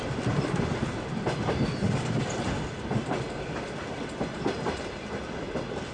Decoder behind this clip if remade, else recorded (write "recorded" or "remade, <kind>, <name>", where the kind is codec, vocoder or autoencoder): recorded